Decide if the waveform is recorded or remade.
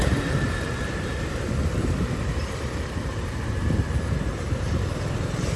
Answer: remade